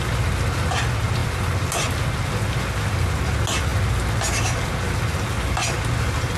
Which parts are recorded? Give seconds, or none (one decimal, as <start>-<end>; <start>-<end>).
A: 0.0-6.4